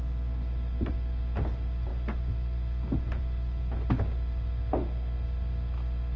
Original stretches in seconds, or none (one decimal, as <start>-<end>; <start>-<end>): 0.0-6.2